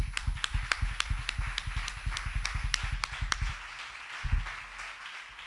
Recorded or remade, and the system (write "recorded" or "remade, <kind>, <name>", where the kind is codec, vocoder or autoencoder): recorded